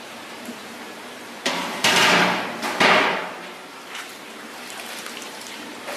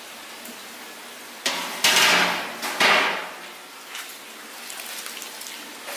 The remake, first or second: first